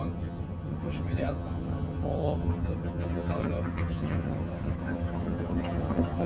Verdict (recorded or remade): remade